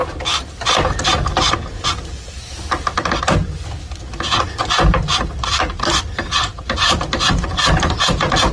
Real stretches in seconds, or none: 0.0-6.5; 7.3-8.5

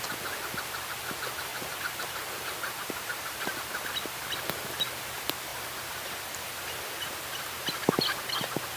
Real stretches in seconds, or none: 0.0-1.5; 3.8-8.8

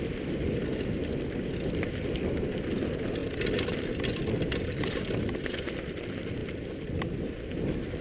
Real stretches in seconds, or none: 0.0-3.2; 4.9-8.0

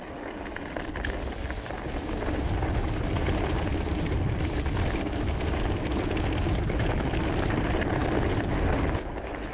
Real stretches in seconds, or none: none

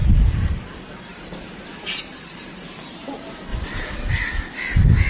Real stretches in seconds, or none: 0.5-1.1; 3.1-3.5; 4.1-5.1

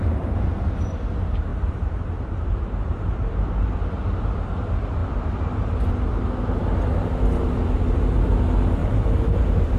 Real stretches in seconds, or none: 0.0-1.5; 2.9-8.8; 9.4-9.8

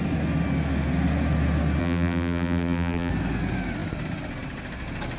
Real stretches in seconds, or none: 0.0-1.8; 3.1-5.2

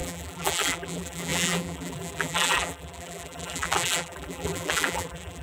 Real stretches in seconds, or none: none